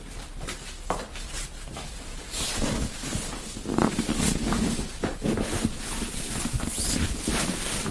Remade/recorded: recorded